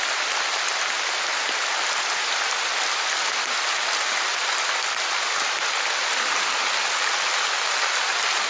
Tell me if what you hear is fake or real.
real